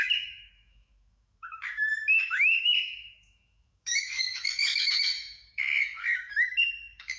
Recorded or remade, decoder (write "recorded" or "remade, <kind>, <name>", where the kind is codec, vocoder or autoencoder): remade, autoencoder, DAC-VAE